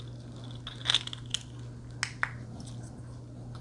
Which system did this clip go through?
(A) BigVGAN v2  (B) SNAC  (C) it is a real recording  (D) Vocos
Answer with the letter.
C